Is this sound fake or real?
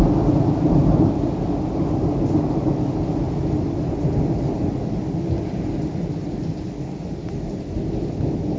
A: real